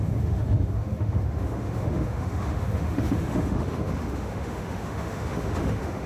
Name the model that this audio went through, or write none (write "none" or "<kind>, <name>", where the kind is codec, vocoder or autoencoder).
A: autoencoder, DAC-VAE